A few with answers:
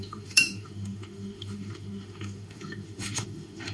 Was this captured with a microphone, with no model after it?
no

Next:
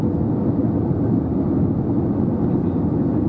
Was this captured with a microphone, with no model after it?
yes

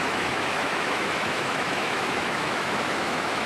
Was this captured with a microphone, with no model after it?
no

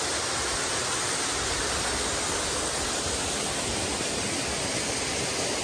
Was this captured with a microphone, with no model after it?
yes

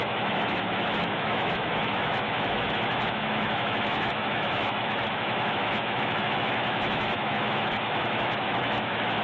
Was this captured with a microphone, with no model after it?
no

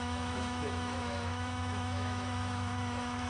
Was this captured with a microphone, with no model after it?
no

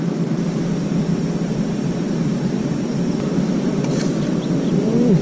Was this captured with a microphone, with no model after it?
yes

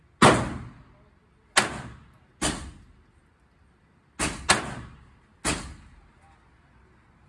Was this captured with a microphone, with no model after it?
yes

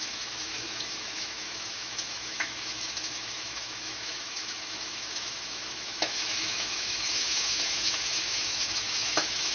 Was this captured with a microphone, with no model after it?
no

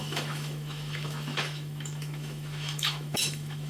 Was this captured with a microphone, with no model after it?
no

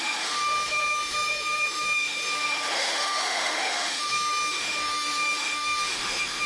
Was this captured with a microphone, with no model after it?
no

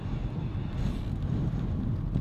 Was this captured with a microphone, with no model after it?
yes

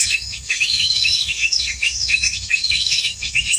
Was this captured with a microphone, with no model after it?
no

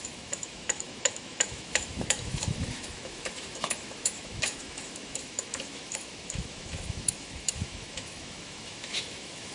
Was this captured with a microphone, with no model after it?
no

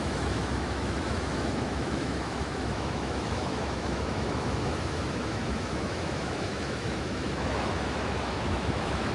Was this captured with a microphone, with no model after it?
no